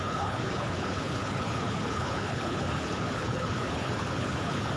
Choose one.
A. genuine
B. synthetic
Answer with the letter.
B